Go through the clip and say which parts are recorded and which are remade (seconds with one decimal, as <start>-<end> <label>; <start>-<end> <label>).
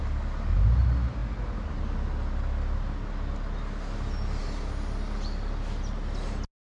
0.0-6.6 recorded